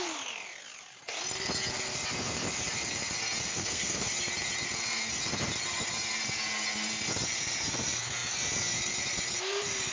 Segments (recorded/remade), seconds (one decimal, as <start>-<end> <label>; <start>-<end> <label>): 0.0-3.5 recorded; 3.5-4.1 remade; 4.1-9.9 recorded